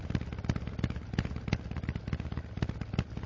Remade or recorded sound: recorded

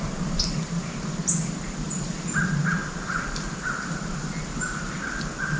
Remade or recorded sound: recorded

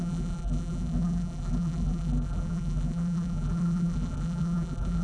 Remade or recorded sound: remade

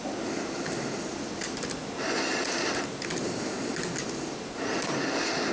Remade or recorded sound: recorded